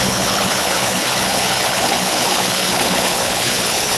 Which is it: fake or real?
fake